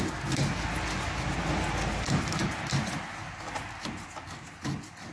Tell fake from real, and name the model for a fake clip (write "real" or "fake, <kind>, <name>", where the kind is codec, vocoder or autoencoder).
real